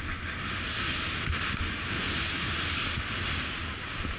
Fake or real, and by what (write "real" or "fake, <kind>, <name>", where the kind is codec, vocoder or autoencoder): real